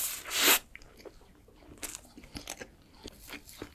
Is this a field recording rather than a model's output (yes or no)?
yes